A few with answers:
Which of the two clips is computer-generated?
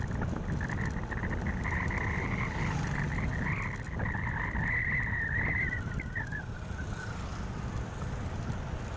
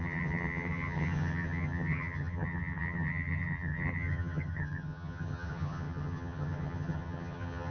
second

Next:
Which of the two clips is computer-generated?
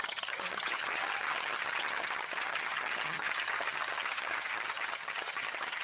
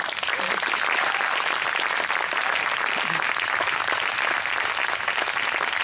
first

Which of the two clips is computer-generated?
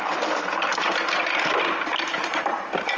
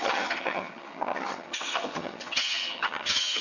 second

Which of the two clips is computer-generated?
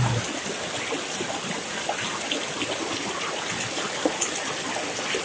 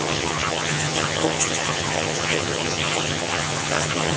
second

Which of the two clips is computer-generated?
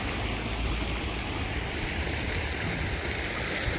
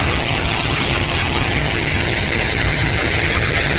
second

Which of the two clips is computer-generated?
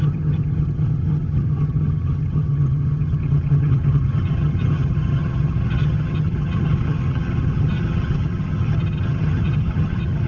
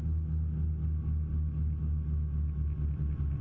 first